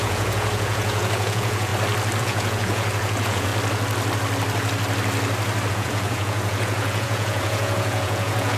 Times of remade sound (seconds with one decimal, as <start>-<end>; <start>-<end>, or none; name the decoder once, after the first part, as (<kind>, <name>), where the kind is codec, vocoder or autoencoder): 0.0-1.7 (vocoder, Vocos); 2.2-3.5; 5.7-8.6